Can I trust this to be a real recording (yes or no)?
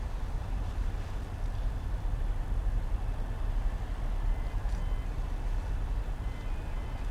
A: yes